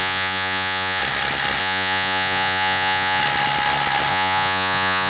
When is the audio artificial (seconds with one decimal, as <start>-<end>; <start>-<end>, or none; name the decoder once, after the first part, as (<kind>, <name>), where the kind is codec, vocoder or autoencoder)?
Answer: 0.0-1.0 (vocoder, Vocos); 1.6-3.2; 4.1-5.1